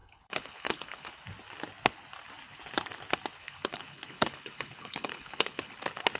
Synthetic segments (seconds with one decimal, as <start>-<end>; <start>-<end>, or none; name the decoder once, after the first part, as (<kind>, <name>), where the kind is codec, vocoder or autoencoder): 0.0-1.1 (codec, HILCodec); 3.4-5.7